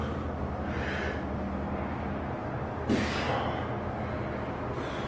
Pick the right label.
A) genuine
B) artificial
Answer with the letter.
A